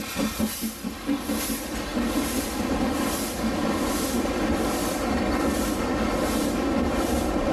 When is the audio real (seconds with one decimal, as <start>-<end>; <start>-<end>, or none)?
0.0-7.5